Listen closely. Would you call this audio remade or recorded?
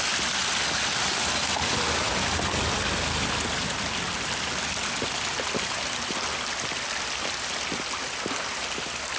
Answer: recorded